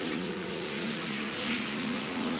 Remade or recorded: remade